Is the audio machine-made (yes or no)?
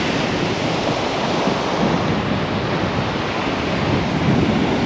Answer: no